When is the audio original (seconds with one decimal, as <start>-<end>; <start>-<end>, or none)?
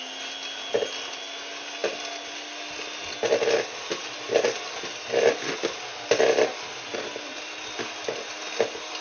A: 0.0-9.0